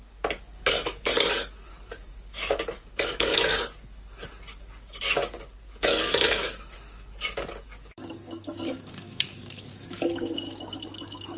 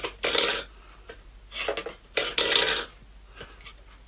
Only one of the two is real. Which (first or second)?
second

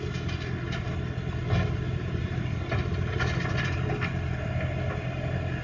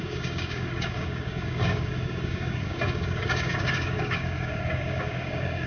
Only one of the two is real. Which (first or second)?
first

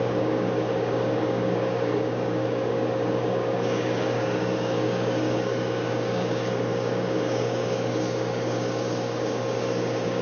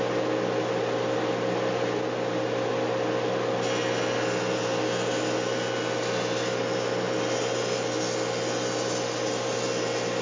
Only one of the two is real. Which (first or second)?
second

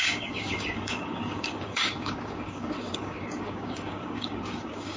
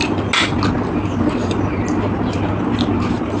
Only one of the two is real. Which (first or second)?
second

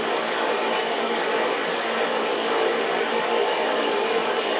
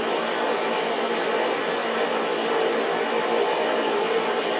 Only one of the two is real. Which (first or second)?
second